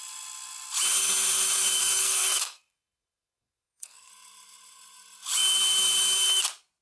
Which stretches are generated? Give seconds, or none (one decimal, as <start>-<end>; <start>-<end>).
1.8-4.1